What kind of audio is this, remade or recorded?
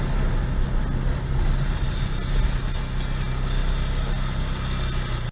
recorded